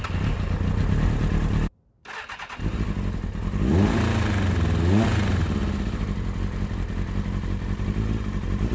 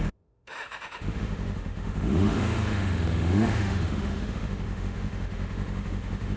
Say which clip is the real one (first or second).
first